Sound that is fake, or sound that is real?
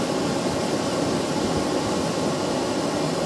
fake